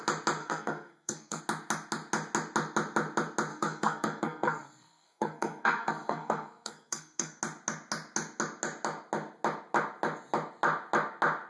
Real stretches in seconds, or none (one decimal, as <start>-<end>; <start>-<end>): 0.0-0.4; 1.4-3.5; 7.4-11.5